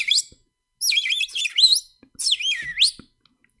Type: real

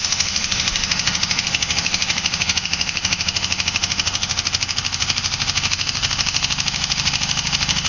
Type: fake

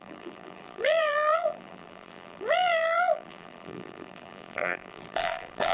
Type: fake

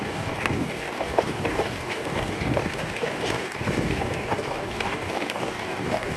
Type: fake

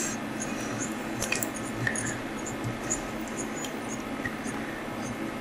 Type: real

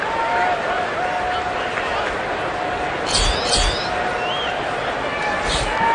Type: real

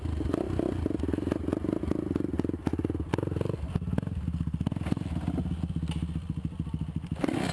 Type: real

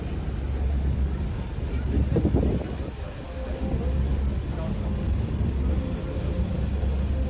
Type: real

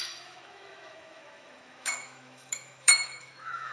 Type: fake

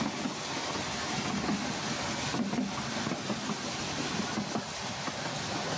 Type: real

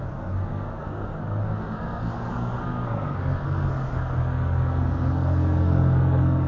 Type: fake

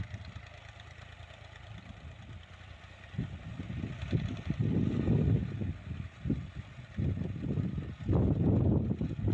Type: real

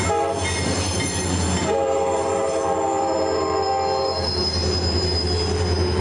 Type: fake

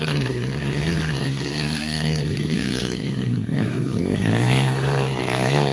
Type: fake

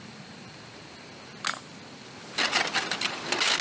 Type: real